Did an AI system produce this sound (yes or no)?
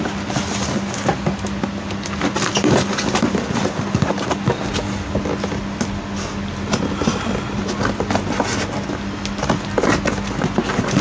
no